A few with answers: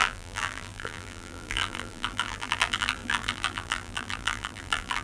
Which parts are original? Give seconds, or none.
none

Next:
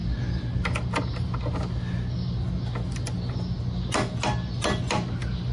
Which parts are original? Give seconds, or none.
0.0-5.5

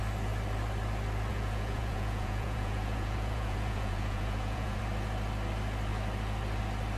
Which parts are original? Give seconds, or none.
0.0-1.3; 4.8-7.0

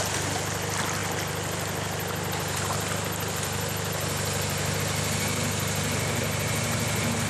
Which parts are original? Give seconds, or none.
0.0-7.3

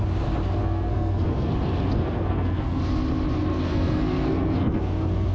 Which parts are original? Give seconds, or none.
0.0-0.6; 1.5-1.9; 2.8-3.5

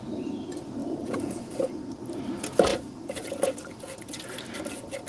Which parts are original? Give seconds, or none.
0.0-0.8; 1.8-2.7; 3.7-5.1